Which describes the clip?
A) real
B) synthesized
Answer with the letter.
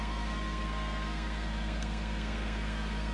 B